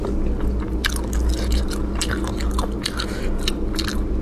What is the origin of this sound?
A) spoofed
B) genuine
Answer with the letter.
B